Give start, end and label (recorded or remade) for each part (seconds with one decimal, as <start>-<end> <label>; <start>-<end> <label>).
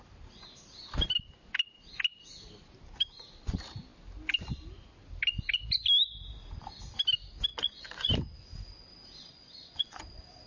0.0-7.5 recorded; 7.5-8.1 remade; 8.1-9.3 recorded; 9.3-10.0 remade; 10.0-10.5 recorded